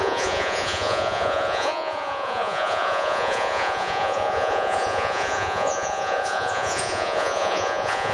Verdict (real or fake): fake